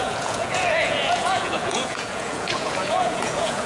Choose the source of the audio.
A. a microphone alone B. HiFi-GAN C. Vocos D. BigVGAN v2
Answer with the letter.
C